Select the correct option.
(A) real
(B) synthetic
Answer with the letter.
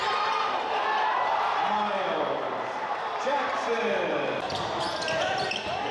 B